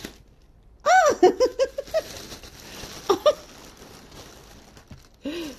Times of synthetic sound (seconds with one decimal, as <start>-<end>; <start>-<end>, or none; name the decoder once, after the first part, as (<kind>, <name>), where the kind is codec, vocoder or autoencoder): none